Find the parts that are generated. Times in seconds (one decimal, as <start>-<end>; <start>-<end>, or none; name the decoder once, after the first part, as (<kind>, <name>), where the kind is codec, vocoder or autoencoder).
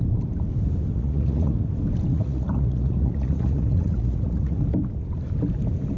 0.9-1.7 (vocoder, Vocos); 2.1-4.6